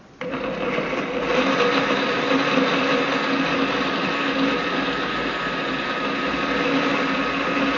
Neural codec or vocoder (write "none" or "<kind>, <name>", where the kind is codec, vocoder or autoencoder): none